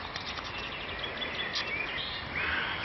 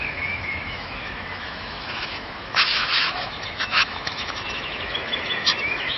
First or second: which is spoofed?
second